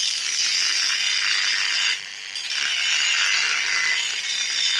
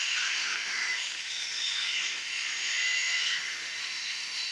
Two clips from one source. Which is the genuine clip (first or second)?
first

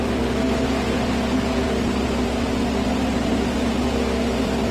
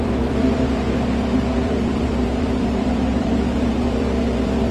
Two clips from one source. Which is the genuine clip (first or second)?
first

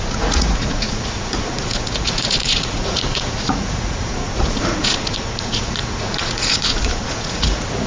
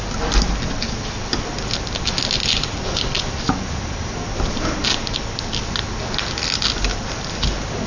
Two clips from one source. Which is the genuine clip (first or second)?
second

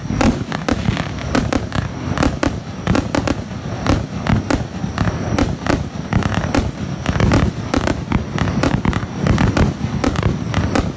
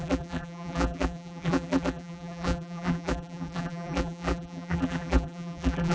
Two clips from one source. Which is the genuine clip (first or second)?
first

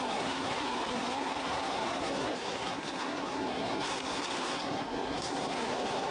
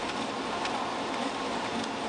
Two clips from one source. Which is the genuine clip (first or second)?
second